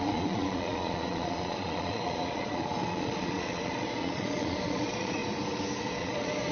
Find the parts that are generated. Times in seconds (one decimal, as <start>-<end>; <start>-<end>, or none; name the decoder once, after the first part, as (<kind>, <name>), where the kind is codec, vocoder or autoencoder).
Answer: 0.0-5.2 (vocoder, Vocos); 5.8-6.5